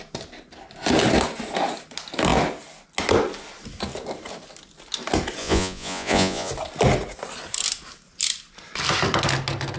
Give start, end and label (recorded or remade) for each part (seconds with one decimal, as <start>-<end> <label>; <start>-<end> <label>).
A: 0.0-5.4 recorded; 5.4-6.5 remade; 6.5-9.8 recorded